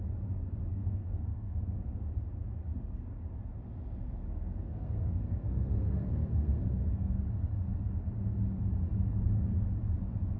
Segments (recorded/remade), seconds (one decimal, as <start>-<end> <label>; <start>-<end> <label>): 0.0-0.7 recorded; 0.7-2.1 remade; 2.1-4.7 recorded; 4.7-7.2 remade; 7.2-10.4 recorded